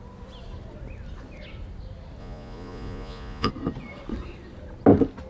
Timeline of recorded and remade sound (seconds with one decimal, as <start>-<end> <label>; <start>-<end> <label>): 0.0-2.2 recorded; 2.2-3.5 remade; 3.5-5.3 recorded